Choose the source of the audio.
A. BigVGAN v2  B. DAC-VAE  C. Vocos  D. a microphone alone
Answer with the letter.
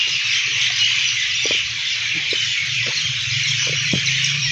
A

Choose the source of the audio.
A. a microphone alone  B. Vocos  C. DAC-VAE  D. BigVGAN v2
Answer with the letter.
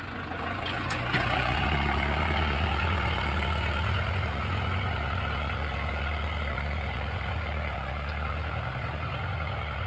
B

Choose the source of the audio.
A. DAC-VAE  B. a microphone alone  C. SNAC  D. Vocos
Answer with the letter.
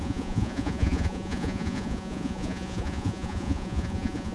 D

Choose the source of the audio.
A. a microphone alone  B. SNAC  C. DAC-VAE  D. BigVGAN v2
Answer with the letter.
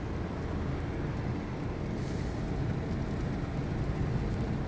A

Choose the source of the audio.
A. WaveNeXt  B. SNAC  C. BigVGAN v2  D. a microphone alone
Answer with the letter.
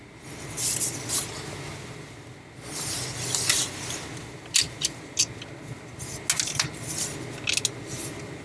D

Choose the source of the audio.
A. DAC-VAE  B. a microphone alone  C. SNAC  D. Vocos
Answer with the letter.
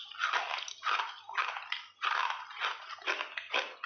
B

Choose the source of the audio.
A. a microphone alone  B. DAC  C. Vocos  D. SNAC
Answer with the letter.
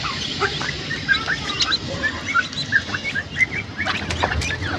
A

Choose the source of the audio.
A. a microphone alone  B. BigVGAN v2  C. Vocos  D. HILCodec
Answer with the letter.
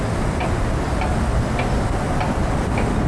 A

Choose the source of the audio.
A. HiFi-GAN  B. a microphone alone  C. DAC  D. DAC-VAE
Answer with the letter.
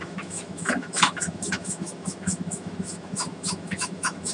D